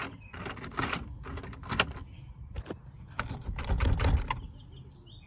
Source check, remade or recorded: recorded